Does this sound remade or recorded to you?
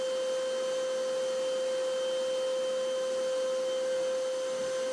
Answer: recorded